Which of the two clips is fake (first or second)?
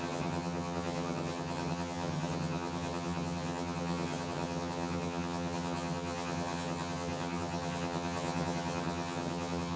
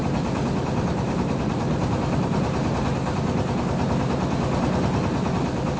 first